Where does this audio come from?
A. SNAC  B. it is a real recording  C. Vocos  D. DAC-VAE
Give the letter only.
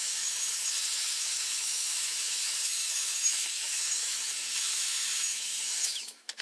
D